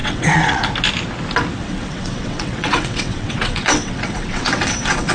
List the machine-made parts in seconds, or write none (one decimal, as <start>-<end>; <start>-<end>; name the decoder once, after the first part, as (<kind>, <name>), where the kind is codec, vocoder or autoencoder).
0.0-0.6 (vocoder, WaveNeXt); 1.6-5.1